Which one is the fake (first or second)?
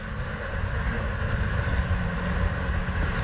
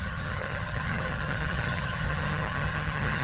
second